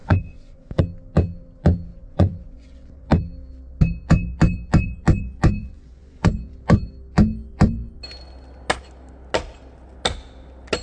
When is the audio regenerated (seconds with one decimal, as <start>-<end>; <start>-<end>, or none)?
0.0-0.8; 1.9-3.1; 5.6-6.3